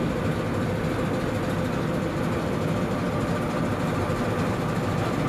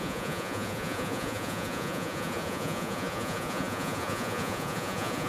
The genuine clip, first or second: first